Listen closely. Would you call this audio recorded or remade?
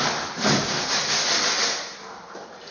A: recorded